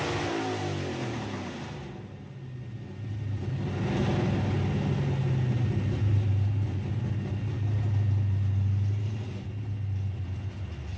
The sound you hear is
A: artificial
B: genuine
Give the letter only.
B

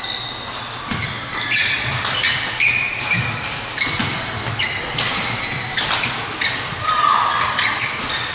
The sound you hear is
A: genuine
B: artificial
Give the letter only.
A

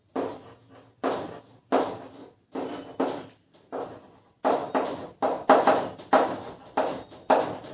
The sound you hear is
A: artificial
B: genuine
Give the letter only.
B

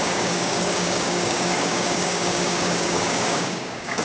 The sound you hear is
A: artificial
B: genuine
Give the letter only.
A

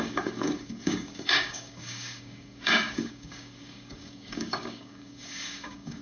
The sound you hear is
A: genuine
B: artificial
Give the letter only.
B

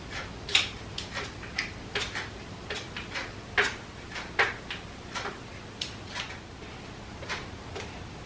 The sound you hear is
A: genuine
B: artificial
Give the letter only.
A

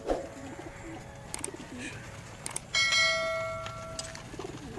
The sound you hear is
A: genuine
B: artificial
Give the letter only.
A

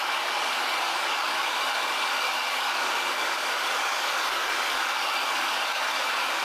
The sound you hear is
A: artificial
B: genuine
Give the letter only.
A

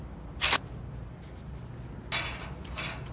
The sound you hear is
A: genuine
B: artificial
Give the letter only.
A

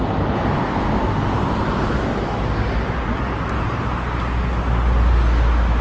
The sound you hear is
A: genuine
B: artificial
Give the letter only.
A